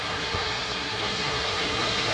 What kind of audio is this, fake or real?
fake